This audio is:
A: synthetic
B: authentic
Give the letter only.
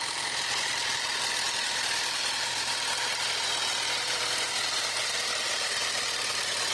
A